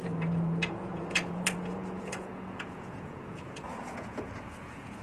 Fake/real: fake